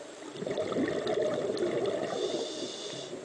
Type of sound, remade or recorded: recorded